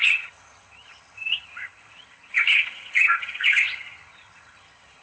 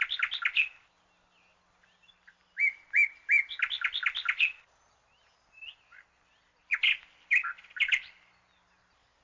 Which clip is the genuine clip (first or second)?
second